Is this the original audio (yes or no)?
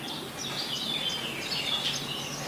yes